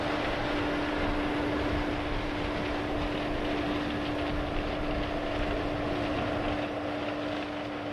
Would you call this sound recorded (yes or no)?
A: yes